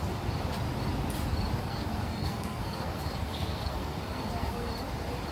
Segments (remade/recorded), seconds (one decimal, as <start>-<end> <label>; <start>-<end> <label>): 0.0-1.6 recorded; 1.6-4.7 remade; 4.7-5.3 recorded

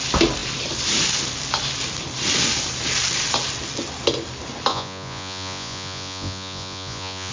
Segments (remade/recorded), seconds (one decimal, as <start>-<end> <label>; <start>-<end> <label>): 0.0-4.7 recorded; 4.7-7.3 remade

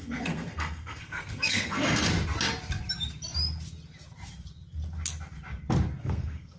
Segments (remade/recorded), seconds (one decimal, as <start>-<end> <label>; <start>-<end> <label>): 0.0-2.0 remade; 2.0-6.0 recorded; 6.0-6.6 remade

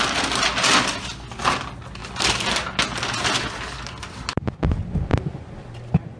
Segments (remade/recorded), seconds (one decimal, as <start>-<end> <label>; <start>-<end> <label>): 0.0-6.2 recorded

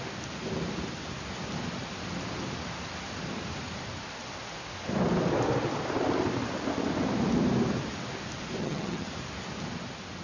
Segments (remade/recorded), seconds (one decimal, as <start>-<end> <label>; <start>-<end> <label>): 0.0-8.6 recorded; 8.6-9.1 remade; 9.1-10.2 recorded

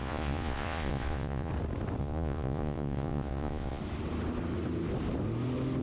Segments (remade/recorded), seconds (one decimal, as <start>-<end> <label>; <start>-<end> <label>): 0.0-1.5 remade; 1.5-2.0 recorded; 2.0-3.8 remade; 3.8-5.8 recorded

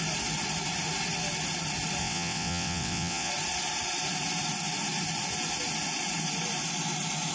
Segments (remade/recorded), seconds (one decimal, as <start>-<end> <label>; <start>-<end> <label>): 0.0-2.0 recorded; 2.0-3.3 remade; 3.3-7.3 recorded

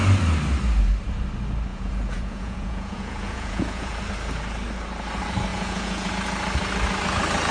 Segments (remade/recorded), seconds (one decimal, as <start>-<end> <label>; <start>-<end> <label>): 0.0-1.7 recorded; 1.7-4.0 remade; 4.0-5.5 recorded; 5.5-6.1 remade; 6.1-7.5 recorded